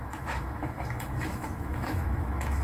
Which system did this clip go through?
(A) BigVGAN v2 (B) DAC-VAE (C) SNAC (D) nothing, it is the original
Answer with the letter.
B